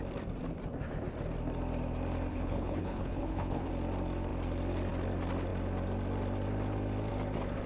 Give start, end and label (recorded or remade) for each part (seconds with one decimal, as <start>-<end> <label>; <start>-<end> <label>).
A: 0.0-2.3 recorded; 2.3-3.7 remade; 3.7-7.7 recorded